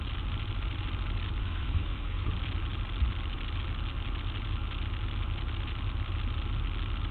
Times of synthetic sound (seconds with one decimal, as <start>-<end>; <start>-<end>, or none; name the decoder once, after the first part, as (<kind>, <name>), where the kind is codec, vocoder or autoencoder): 1.4-2.3 (codec, SNAC)